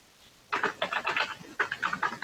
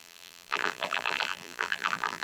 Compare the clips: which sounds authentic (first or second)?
first